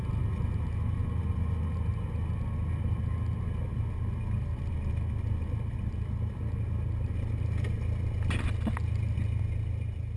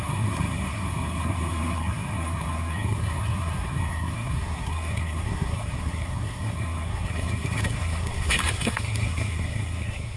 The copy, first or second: second